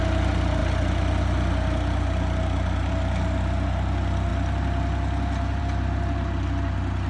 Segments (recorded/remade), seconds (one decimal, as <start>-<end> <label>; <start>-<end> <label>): 0.0-7.1 recorded